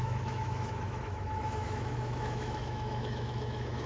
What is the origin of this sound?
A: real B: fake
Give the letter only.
B